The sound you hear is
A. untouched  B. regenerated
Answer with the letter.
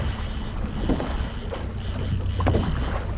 A